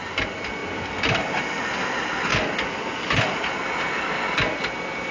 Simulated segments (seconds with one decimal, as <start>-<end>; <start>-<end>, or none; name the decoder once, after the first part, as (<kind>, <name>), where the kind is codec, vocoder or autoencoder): none